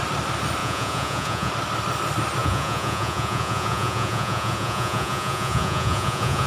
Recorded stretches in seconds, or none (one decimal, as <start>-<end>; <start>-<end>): 0.0-0.6; 1.5-2.4